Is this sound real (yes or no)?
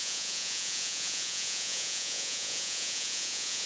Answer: no